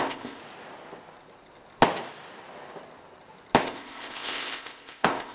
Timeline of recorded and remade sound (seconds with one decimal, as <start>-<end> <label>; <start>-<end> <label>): 0.0-0.4 remade; 0.4-3.6 recorded; 3.6-5.3 remade